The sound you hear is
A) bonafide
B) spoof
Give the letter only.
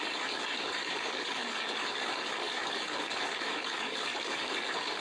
B